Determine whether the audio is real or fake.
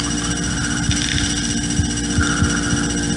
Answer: real